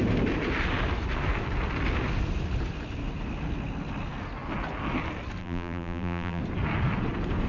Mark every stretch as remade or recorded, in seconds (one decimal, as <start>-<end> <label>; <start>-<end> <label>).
0.0-5.4 recorded; 5.4-6.4 remade; 6.4-7.5 recorded